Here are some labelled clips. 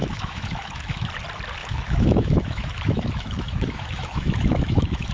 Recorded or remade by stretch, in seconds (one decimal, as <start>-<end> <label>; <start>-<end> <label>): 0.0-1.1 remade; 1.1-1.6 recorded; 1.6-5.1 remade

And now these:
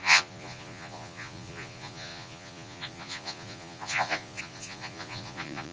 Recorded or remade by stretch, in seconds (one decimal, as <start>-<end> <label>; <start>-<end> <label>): 0.0-5.7 remade

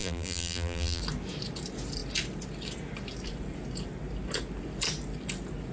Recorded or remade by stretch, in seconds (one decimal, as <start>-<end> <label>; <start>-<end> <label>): 0.0-1.0 remade; 1.0-5.7 recorded

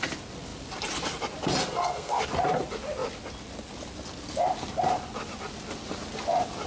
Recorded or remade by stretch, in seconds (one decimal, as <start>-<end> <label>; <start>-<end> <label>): 0.0-1.6 recorded; 1.6-2.2 remade; 2.2-6.7 recorded

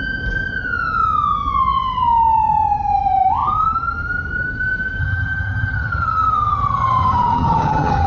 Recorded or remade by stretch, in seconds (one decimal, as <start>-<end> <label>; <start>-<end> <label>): 0.0-5.0 recorded; 5.0-8.1 remade